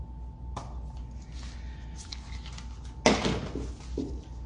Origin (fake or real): real